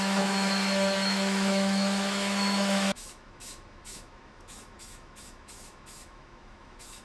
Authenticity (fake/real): fake